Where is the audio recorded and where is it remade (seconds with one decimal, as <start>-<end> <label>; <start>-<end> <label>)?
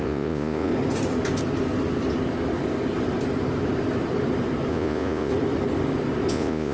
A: 0.0-0.7 remade; 0.7-4.7 recorded; 4.7-5.3 remade; 5.3-6.3 recorded; 6.3-6.7 remade